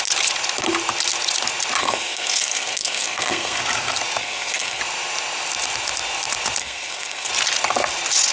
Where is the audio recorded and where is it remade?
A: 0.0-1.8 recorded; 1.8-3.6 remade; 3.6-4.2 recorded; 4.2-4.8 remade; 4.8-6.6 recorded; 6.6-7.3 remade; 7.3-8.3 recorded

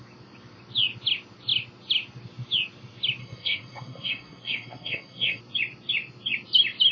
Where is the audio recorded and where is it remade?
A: 0.0-3.2 recorded; 3.2-5.4 remade; 5.4-6.9 recorded

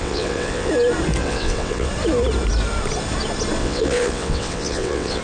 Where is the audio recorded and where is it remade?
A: 0.0-0.7 remade; 0.7-1.2 recorded; 1.2-1.9 remade; 1.9-3.6 recorded; 3.6-5.2 remade

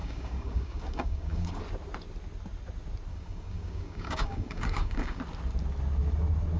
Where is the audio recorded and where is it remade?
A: 0.0-1.6 remade; 1.6-3.1 recorded; 3.1-5.2 remade; 5.2-6.6 recorded

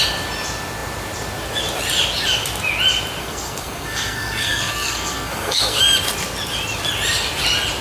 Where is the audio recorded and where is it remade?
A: 0.0-3.2 recorded; 3.2-5.8 remade; 5.8-7.8 recorded

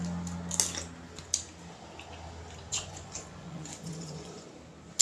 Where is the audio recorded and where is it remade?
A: 0.0-2.7 recorded; 2.7-4.5 remade; 4.5-5.0 recorded